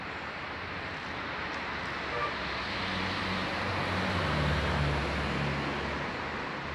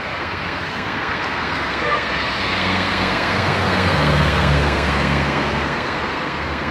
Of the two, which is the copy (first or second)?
second